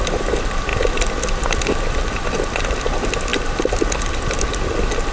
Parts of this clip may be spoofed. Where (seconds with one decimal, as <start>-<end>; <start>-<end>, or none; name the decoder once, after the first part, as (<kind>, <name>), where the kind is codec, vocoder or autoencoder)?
none